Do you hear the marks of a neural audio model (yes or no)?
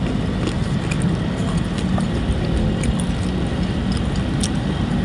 no